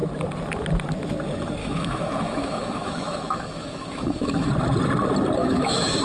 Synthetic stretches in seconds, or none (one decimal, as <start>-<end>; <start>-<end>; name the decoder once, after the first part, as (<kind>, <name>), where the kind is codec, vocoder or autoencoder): 1.6-4.5 (autoencoder, DAC-VAE); 5.4-6.0